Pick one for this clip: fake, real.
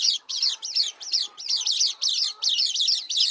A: real